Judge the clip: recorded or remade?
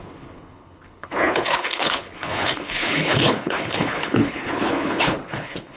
remade